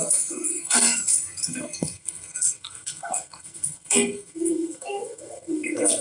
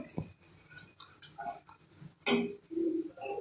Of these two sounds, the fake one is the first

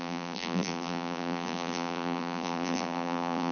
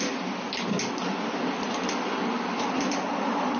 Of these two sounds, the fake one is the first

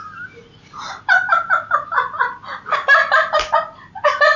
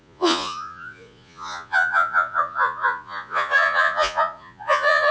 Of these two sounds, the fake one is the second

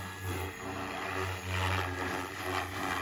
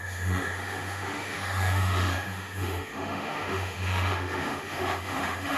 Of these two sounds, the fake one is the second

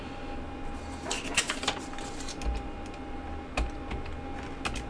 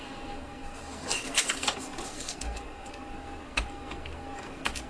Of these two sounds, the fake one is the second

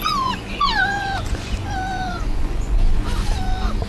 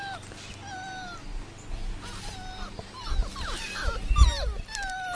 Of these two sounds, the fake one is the first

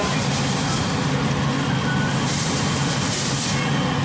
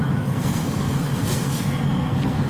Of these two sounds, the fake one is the second